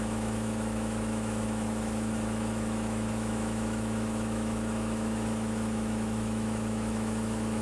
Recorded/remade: remade